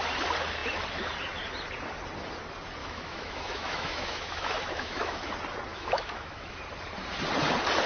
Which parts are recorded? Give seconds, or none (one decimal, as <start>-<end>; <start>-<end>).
0.0-2.8; 5.3-5.7; 6.6-7.9